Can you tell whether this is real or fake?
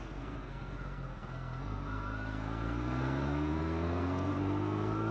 fake